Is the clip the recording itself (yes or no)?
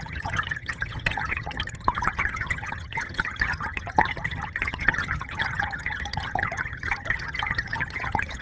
no